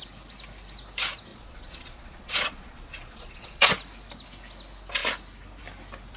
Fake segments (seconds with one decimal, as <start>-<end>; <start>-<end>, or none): 1.3-3.7